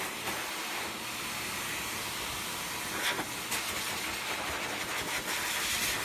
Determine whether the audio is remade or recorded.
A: recorded